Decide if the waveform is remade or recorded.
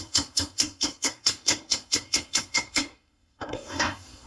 remade